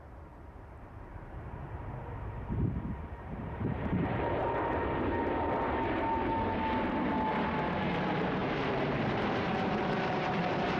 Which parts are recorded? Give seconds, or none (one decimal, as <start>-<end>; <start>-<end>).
4.4-7.8